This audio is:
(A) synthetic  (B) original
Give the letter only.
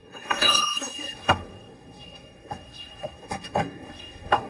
A